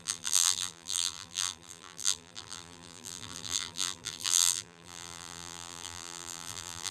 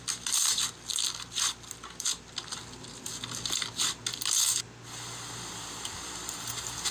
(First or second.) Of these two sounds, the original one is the second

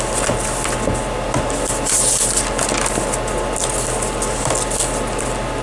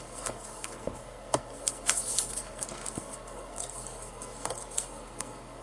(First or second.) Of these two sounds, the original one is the first